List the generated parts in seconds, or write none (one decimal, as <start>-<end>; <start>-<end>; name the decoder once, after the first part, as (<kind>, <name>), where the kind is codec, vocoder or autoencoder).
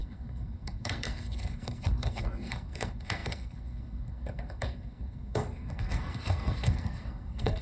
0.0-7.6 (codec, SNAC)